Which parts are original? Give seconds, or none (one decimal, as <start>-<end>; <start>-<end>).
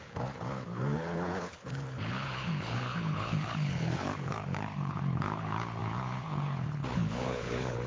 none